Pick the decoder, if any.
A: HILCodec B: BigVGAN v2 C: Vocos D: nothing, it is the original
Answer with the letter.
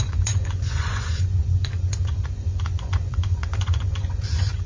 C